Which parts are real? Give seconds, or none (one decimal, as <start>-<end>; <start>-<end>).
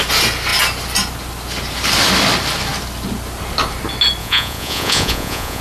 0.0-4.2